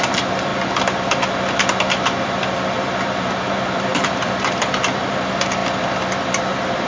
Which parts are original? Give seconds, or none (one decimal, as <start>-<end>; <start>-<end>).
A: 0.5-2.2